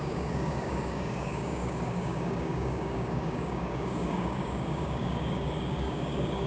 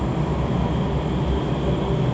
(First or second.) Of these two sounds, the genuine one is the second